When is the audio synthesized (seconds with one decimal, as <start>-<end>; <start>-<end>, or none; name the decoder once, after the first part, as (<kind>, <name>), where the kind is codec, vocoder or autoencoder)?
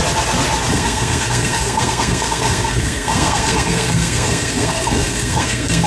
0.7-5.9 (codec, SNAC)